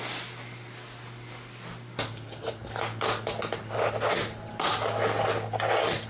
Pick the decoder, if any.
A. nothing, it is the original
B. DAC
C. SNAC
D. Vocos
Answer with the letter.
A